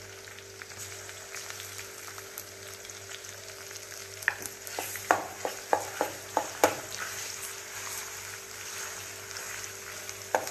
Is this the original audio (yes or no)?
no